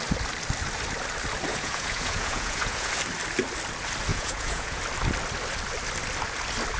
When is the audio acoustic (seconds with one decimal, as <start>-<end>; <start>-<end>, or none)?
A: 0.0-1.5; 2.9-4.1; 4.8-6.8